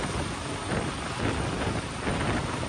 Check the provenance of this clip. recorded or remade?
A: recorded